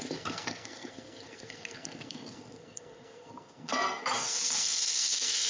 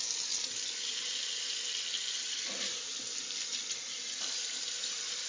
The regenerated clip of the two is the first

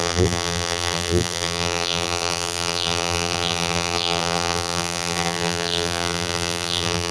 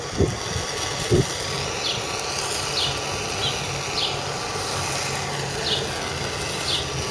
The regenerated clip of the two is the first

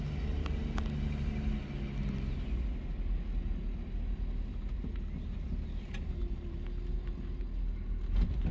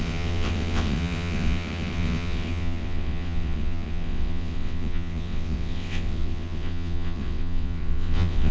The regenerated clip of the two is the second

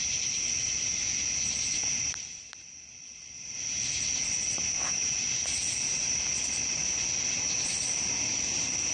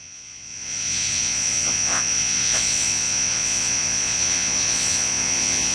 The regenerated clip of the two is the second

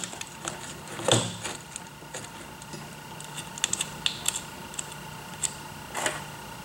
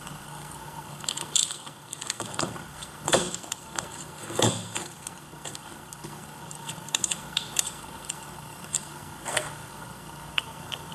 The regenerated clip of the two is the second